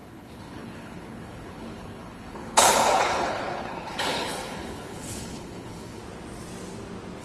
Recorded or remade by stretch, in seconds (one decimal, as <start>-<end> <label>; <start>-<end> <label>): 0.0-6.0 remade; 6.0-7.2 recorded